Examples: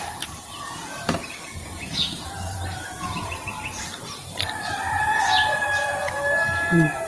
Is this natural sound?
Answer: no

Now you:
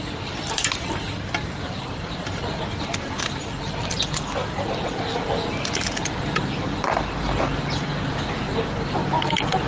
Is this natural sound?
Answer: yes